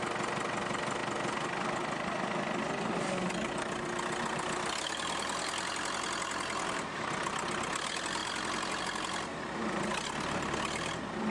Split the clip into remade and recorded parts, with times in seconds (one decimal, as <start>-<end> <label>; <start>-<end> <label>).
0.0-11.3 recorded